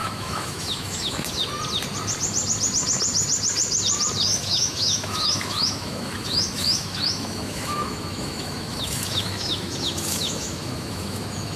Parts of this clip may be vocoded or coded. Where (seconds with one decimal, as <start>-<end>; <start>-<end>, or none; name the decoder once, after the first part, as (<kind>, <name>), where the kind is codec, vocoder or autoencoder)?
0.0-1.4 (autoencoder, DAC-VAE); 4.4-11.6